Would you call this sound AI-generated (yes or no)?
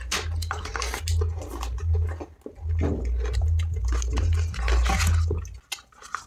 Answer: no